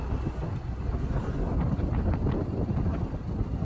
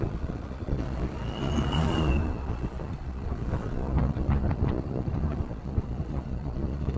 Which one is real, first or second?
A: first